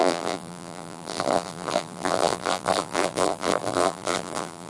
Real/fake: fake